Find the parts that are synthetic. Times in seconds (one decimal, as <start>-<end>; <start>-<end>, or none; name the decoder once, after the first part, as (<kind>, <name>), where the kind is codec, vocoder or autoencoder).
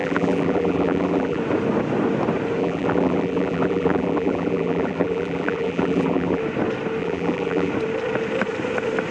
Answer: 0.0-1.4 (vocoder, BigVGAN v2); 2.6-6.4; 7.0-7.7